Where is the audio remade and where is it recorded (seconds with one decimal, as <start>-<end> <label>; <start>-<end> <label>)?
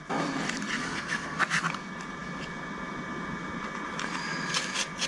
0.0-0.8 recorded; 0.8-1.4 remade; 1.4-5.1 recorded